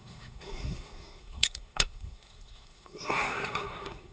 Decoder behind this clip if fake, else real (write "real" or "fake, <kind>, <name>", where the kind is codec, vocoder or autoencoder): fake, codec, SNAC